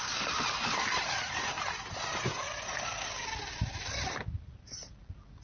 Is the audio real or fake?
real